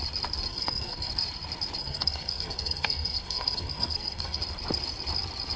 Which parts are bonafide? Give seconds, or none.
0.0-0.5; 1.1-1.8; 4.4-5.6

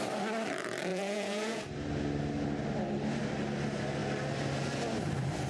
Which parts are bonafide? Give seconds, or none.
0.0-0.9; 1.6-5.5